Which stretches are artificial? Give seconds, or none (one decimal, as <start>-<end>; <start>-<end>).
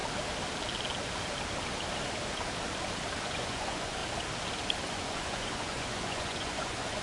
3.2-4.0; 4.8-7.0